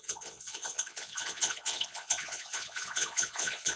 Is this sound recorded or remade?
remade